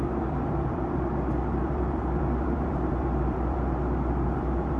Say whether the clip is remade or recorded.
remade